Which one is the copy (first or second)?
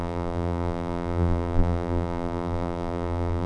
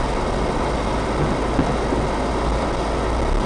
first